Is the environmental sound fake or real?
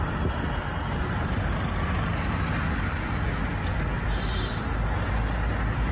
real